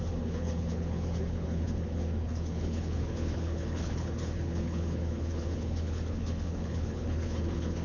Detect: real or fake fake